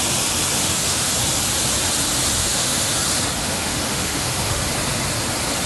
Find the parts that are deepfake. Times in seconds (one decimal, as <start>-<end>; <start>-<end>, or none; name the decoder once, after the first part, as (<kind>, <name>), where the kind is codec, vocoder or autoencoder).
0.6-1.1 (autoencoder, DAC-VAE); 2.4-2.9; 3.4-4.7